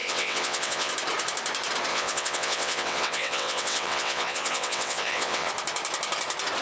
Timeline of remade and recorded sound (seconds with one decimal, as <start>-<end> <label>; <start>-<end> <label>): 0.0-0.9 remade; 0.9-1.9 recorded; 1.9-5.5 remade; 5.5-6.6 recorded